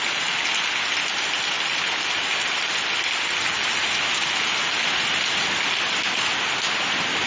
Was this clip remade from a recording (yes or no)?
no